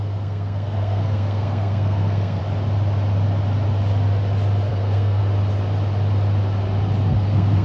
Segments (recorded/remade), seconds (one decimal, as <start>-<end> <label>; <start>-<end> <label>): 0.0-2.4 remade; 2.4-4.7 recorded; 4.7-5.2 remade; 5.2-7.0 recorded; 7.0-7.6 remade